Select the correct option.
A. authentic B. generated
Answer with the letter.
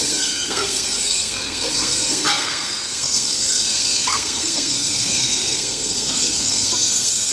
B